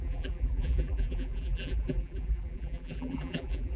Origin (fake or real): fake